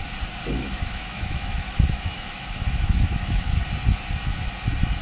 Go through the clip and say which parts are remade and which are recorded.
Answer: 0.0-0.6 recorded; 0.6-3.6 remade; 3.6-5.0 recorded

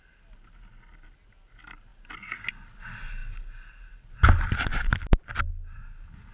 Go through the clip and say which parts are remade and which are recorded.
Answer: 0.0-6.3 recorded

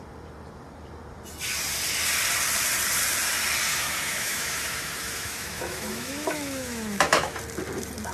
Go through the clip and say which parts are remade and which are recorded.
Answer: 0.0-3.7 recorded; 3.7-7.4 remade; 7.4-8.1 recorded

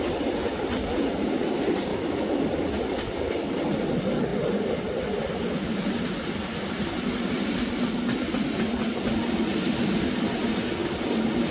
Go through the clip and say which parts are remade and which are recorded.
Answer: 0.0-1.9 recorded; 1.9-2.4 remade; 2.4-11.5 recorded

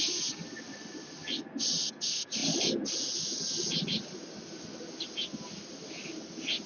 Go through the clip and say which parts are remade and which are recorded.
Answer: 0.0-6.7 recorded

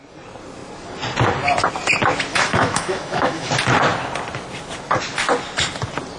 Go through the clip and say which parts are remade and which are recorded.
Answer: 0.0-2.3 recorded; 2.3-3.5 remade; 3.5-6.2 recorded

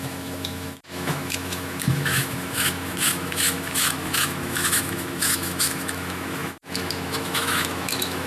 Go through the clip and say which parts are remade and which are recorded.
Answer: 0.0-8.3 remade